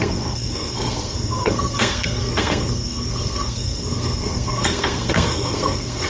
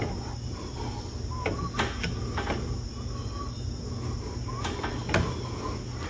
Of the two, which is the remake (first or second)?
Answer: first